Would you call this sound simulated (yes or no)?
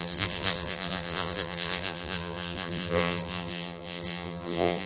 yes